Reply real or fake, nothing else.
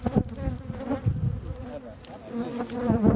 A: real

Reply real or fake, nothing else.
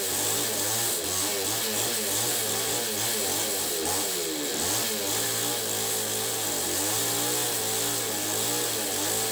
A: real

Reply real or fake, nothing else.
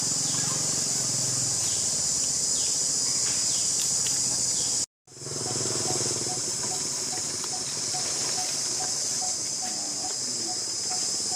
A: real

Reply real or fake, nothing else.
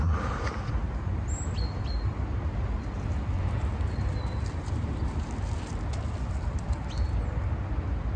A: real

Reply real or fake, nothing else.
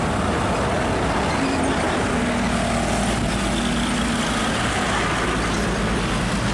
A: real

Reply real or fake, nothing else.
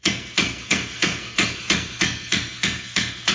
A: fake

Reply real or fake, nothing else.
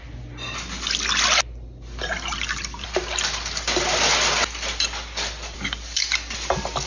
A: real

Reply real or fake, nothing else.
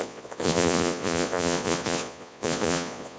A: fake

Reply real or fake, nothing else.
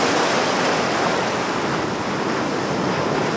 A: real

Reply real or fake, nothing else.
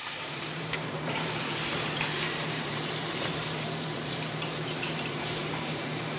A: fake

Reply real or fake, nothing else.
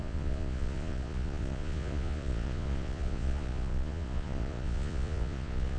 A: fake